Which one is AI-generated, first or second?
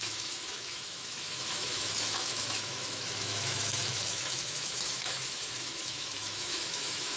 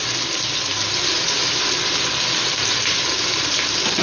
first